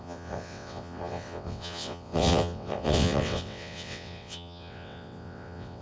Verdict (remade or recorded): remade